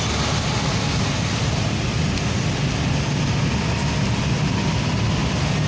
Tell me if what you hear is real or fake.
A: real